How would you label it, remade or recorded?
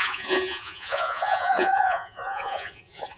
remade